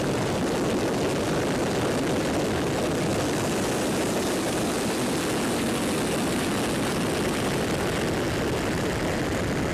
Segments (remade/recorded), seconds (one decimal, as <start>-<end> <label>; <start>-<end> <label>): 0.0-9.7 recorded